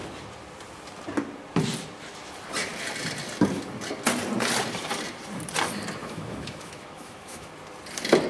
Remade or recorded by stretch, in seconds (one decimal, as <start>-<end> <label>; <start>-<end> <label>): 0.0-6.0 recorded; 6.0-7.5 remade; 7.5-8.3 recorded